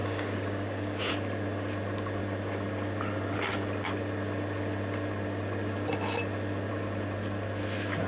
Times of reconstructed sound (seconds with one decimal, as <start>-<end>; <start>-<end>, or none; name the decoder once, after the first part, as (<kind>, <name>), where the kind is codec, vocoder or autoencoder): 0.0-1.1 (codec, DAC)